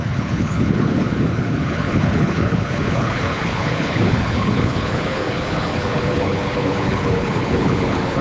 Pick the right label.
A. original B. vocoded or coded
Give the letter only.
B